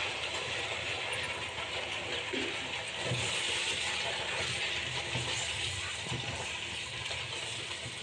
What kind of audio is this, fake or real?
real